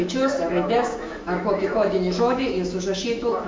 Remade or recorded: remade